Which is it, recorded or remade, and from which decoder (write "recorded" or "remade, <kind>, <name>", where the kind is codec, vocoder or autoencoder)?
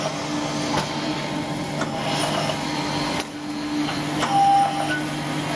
recorded